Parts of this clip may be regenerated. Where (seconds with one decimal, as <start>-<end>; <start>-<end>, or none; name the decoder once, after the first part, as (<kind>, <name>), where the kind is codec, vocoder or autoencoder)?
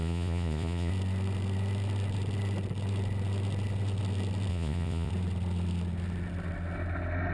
0.0-0.9 (vocoder, Vocos); 4.5-5.1